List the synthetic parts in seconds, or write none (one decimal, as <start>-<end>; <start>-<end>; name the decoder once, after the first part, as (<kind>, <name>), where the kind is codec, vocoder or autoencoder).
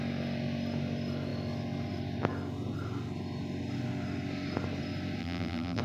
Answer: 5.2-5.8 (vocoder, BigVGAN v2)